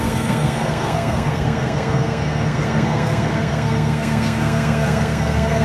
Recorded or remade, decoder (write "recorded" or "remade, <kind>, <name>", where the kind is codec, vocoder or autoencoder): remade, codec, SNAC